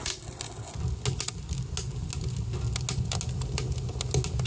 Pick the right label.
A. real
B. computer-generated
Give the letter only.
A